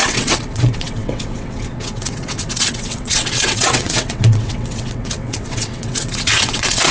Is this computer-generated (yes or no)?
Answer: yes